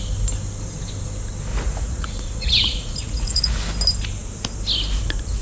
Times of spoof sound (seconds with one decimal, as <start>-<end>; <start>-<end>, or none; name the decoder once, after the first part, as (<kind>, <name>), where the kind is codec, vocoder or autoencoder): 1.5-3.6 (vocoder, Vocos)